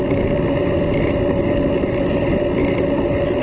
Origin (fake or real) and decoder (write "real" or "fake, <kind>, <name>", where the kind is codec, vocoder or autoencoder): real